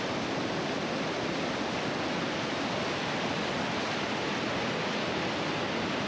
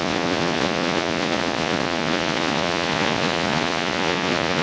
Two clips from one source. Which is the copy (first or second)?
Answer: second